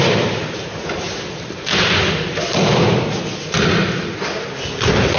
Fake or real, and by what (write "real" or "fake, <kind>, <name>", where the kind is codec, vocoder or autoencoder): real